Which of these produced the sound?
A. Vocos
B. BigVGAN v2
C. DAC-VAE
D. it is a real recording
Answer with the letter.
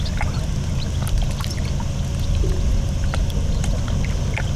D